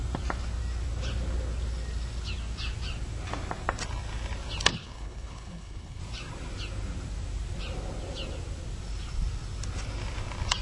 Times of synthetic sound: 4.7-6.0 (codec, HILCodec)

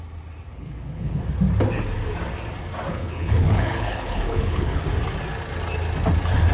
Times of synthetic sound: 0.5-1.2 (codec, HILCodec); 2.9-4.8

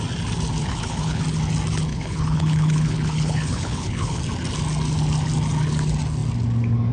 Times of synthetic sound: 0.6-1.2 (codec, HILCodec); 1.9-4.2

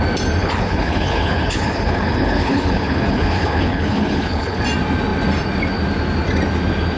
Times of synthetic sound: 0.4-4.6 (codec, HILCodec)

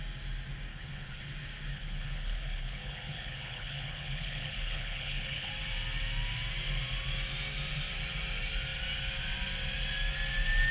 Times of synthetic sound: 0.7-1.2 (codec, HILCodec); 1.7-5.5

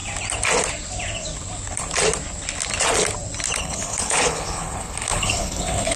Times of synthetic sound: 3.6-6.0 (codec, HILCodec)

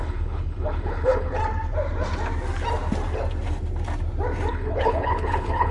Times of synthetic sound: 0.0-1.4 (codec, HILCodec); 4.5-5.7

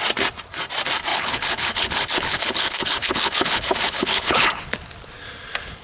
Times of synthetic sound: 1.1-4.6 (codec, HILCodec)